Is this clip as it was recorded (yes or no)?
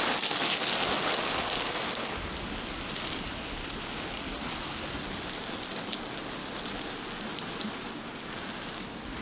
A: yes